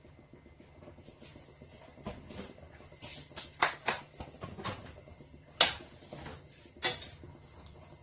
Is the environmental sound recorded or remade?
recorded